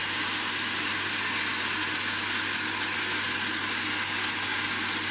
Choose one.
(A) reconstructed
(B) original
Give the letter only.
B